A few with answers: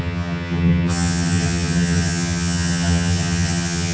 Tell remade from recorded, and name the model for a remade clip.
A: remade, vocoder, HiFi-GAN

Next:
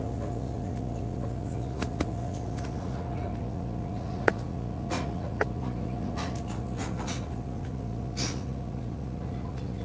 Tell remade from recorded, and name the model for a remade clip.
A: remade, vocoder, Vocos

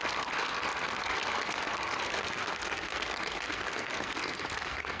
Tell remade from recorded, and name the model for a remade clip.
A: remade, codec, SNAC